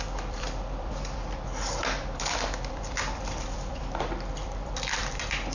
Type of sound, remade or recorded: remade